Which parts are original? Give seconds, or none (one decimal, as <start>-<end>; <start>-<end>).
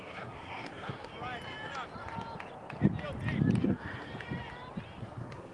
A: 1.1-3.6; 4.1-5.0